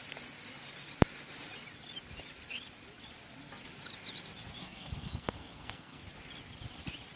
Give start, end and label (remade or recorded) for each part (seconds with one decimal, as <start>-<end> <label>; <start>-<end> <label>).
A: 0.0-4.6 recorded; 4.6-6.0 remade; 6.0-7.2 recorded